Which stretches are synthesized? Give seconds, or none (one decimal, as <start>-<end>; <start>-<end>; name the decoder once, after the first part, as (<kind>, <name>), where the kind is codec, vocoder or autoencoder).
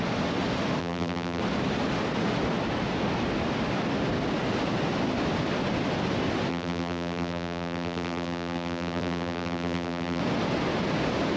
0.8-1.4 (vocoder, BigVGAN v2); 6.5-10.2